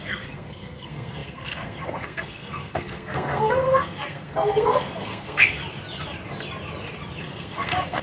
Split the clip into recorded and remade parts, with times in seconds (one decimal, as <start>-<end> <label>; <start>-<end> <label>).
0.0-5.6 remade; 5.6-7.2 recorded; 7.2-8.0 remade

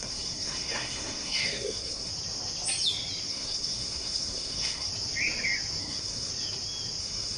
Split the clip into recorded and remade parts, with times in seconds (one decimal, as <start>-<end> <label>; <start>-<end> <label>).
0.0-2.1 remade; 2.1-3.3 recorded; 3.3-4.9 remade; 4.9-5.8 recorded; 5.8-6.3 remade; 6.3-7.0 recorded; 7.0-7.4 remade

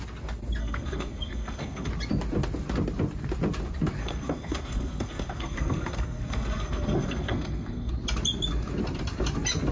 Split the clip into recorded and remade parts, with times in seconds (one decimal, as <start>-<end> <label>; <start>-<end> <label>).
0.0-0.6 recorded; 0.6-1.9 remade; 1.9-4.0 recorded; 4.0-7.9 remade; 7.9-9.7 recorded

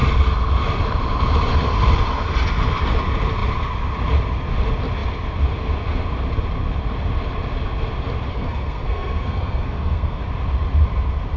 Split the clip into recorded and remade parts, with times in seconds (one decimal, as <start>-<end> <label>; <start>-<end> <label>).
0.0-8.3 recorded; 8.3-10.2 remade; 10.2-11.4 recorded

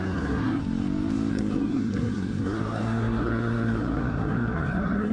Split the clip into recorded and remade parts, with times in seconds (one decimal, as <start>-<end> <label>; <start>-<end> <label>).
0.0-0.6 remade; 0.6-1.3 recorded; 1.3-5.1 remade

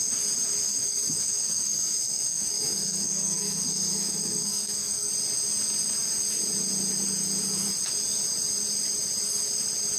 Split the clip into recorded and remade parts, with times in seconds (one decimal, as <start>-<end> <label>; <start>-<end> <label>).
0.0-0.6 recorded; 0.6-5.1 remade; 5.1-10.0 recorded

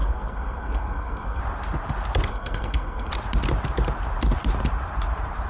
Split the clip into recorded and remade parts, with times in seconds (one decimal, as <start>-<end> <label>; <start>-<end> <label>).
0.0-1.4 remade; 1.4-2.3 recorded; 2.3-3.1 remade; 3.1-5.5 recorded